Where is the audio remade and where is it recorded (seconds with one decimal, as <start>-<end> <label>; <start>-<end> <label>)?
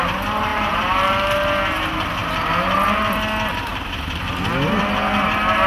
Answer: 0.0-0.5 recorded; 0.5-1.1 remade; 1.1-3.7 recorded; 3.7-4.3 remade; 4.3-5.7 recorded